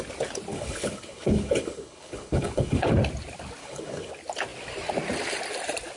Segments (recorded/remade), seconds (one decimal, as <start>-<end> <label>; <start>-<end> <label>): 0.0-0.5 recorded; 0.5-2.9 remade; 2.9-3.6 recorded; 3.6-4.1 remade; 4.1-6.0 recorded